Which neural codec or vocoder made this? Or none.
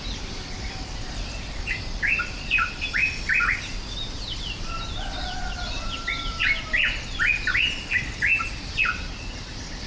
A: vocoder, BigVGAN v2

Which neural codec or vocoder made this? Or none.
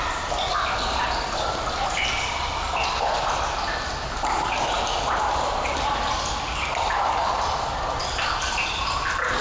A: none